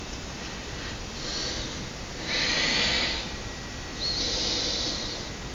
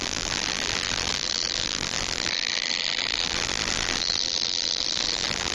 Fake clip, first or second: second